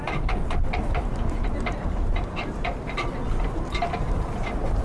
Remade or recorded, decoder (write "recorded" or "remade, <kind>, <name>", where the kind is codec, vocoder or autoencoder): recorded